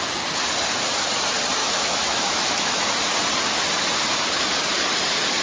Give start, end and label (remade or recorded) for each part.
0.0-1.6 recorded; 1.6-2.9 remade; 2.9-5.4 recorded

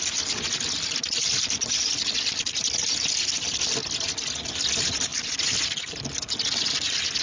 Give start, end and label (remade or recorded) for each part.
0.0-7.2 recorded

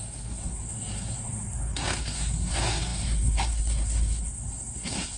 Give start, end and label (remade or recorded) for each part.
0.0-5.2 remade

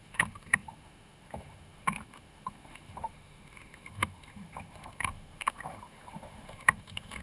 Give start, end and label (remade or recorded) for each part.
0.0-7.2 remade